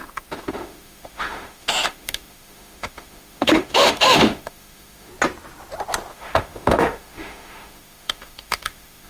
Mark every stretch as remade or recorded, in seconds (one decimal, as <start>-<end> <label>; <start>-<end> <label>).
0.0-5.1 remade; 5.1-6.1 recorded; 6.1-9.1 remade